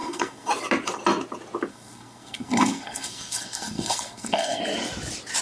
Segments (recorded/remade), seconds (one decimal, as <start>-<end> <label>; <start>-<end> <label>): 0.0-0.5 remade; 0.5-1.7 recorded; 1.7-4.6 remade; 4.6-5.4 recorded